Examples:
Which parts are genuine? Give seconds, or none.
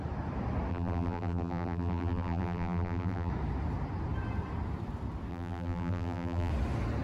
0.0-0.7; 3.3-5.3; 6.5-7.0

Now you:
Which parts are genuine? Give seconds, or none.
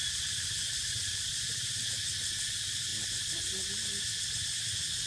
1.9-5.1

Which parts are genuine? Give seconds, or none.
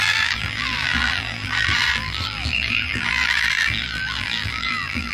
none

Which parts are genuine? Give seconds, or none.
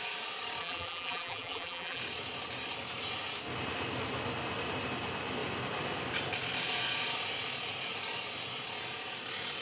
0.0-0.6; 2.0-9.6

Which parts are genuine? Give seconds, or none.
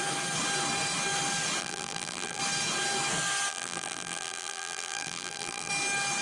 0.0-1.6; 2.4-3.5; 5.7-6.2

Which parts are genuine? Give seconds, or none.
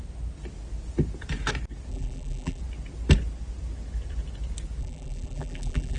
0.0-1.9; 2.6-4.8